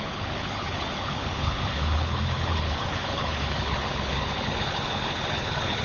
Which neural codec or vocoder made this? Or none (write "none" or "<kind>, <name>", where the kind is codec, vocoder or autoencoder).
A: codec, HILCodec